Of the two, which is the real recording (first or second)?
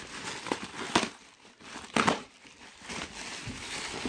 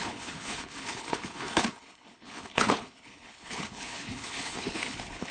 first